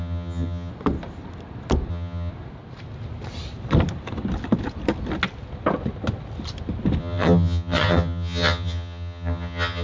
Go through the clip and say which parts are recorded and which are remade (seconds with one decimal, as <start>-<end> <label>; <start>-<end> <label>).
0.0-0.7 remade; 0.7-1.9 recorded; 1.9-2.3 remade; 2.3-7.0 recorded; 7.0-9.8 remade